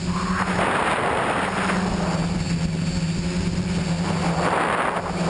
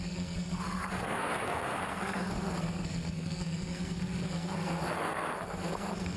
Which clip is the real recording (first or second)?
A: first